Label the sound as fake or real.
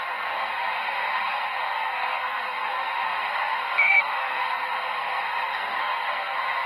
fake